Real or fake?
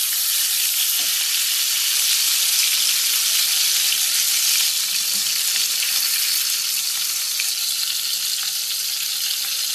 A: real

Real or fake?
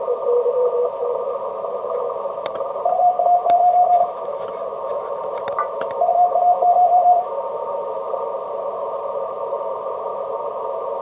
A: fake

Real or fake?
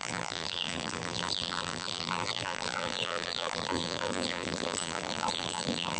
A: fake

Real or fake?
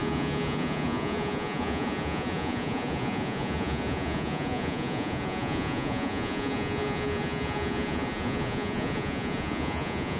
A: fake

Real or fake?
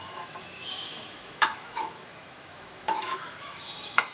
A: fake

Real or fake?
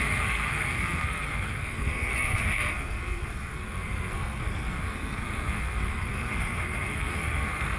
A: fake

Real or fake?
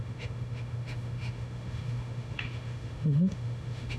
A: fake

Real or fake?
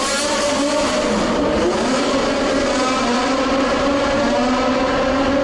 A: real